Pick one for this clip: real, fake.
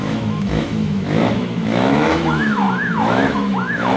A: fake